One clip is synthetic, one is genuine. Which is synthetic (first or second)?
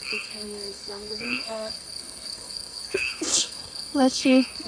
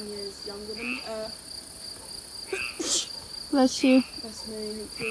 first